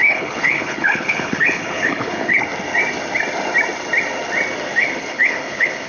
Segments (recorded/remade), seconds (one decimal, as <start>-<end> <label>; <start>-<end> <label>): 0.0-2.5 remade; 2.5-4.8 recorded; 4.8-5.9 remade